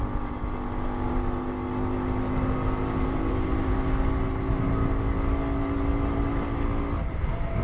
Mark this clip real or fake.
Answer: real